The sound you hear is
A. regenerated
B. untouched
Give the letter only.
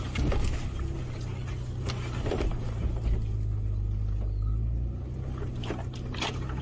B